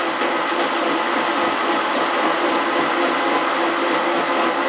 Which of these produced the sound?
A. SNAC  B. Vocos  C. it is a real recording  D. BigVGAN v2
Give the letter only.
C